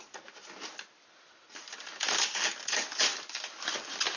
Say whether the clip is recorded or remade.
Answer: recorded